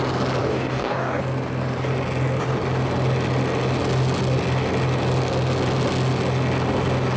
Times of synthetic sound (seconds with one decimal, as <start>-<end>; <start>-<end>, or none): 0.4-1.2